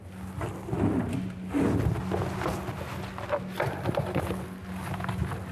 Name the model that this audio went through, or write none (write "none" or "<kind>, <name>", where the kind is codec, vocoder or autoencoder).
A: none